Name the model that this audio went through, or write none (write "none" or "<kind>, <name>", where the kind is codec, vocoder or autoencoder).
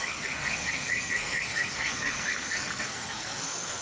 codec, SNAC